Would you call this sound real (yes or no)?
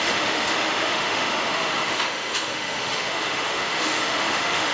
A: no